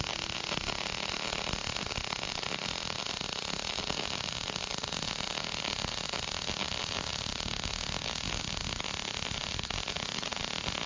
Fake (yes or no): no